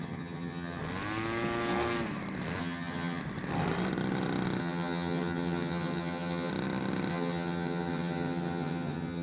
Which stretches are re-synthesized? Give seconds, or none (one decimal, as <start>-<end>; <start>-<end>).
0.0-0.8; 2.6-3.2; 4.6-6.5; 7.1-9.2